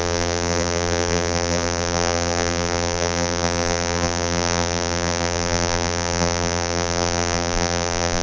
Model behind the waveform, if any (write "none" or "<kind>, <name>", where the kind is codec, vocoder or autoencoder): vocoder, BigVGAN v2